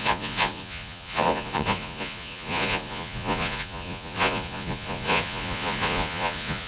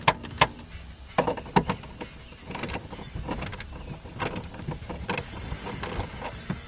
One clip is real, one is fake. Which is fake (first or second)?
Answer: first